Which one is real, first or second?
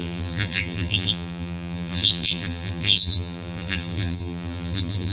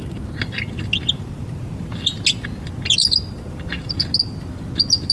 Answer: second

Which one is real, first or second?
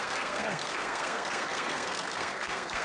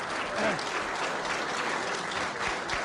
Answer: second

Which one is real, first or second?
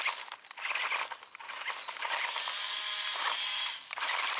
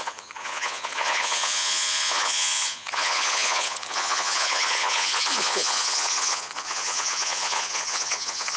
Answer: first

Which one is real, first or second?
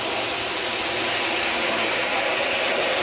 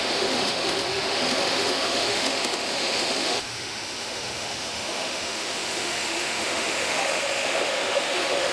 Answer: first